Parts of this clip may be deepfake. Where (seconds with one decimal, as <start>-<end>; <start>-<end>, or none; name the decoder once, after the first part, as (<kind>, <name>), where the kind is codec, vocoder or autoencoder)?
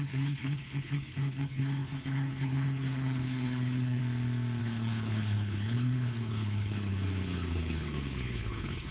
0.0-4.0 (codec, HILCodec); 4.6-8.9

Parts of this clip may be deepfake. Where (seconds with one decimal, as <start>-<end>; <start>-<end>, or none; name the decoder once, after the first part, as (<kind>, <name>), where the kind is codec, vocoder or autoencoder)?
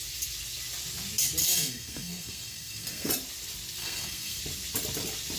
1.4-3.1 (codec, SNAC); 3.8-4.4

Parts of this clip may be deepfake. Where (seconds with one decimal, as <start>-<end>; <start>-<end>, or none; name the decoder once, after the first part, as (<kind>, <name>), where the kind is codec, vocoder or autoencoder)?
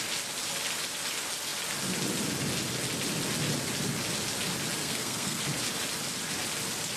4.8-5.4 (codec, SNAC)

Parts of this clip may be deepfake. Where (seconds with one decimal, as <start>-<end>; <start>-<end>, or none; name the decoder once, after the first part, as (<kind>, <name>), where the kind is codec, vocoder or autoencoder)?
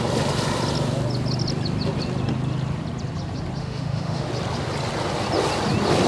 3.6-4.3 (autoencoder, DAC-VAE)